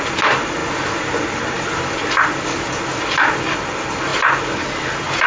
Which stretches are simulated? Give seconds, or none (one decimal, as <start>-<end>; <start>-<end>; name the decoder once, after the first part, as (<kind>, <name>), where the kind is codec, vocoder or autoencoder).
none